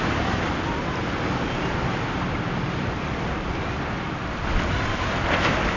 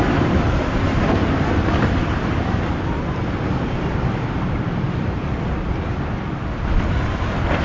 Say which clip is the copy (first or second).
second